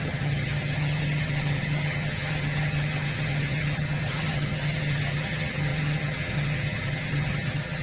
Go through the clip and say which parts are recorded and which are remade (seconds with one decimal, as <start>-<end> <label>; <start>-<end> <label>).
0.0-7.8 remade